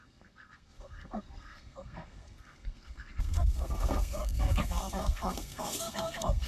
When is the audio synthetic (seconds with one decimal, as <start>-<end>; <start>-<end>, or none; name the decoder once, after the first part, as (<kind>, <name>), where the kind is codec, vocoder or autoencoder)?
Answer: 0.0-6.5 (codec, SNAC)